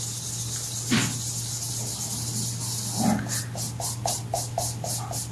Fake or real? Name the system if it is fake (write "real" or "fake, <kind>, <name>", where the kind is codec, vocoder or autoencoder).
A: real